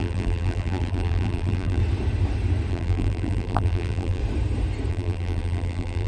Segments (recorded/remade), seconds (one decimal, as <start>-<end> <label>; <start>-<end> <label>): 0.0-1.8 remade; 1.8-2.7 recorded; 2.7-4.2 remade; 4.2-4.9 recorded; 4.9-6.1 remade